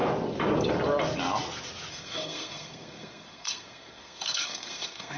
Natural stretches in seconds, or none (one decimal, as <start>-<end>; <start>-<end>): 0.0-1.9